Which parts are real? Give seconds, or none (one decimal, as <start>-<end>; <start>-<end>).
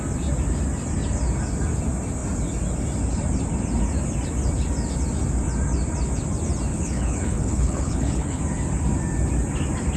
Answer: 0.0-6.7; 8.4-10.0